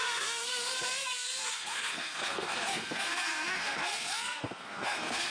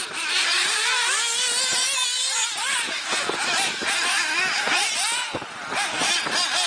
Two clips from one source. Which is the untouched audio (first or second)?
second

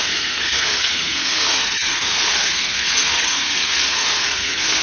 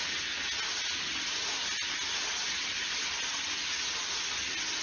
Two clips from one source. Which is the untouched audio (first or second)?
second